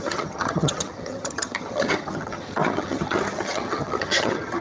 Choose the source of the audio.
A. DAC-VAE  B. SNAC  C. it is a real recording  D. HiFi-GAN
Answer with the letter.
D